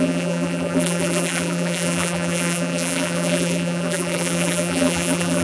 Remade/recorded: remade